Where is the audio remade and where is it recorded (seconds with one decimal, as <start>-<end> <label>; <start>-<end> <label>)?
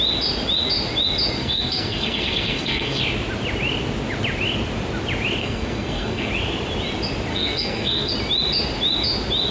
0.0-1.4 recorded; 1.4-3.0 remade; 3.0-5.4 recorded; 5.4-6.3 remade; 6.3-7.3 recorded; 7.3-8.1 remade; 8.1-9.5 recorded